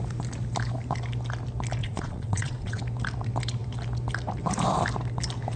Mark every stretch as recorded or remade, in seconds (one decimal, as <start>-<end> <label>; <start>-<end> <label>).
0.0-1.8 recorded; 1.8-2.8 remade; 2.8-5.6 recorded